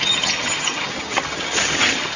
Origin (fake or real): fake